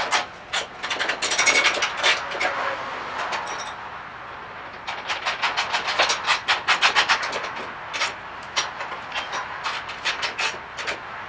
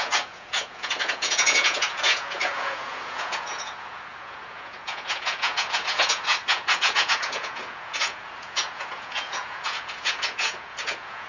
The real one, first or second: first